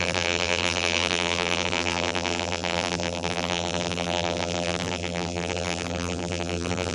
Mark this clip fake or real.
fake